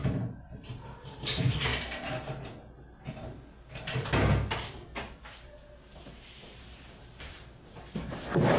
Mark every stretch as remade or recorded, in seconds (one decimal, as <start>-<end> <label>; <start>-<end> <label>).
0.0-1.7 remade; 1.7-5.2 recorded; 5.2-8.6 remade